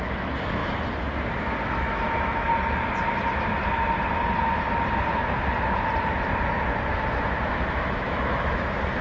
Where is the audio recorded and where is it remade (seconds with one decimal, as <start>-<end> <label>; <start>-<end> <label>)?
0.0-0.6 remade; 0.6-1.6 recorded; 1.6-2.5 remade; 2.5-7.7 recorded; 7.7-9.0 remade